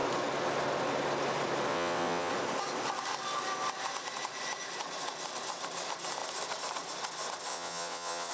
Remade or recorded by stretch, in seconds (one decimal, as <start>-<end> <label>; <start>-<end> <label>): 0.0-1.7 recorded; 1.7-2.3 remade; 2.3-7.5 recorded; 7.5-8.3 remade